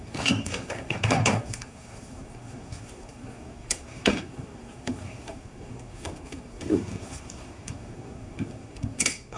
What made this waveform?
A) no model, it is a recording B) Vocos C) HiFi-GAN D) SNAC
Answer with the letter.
D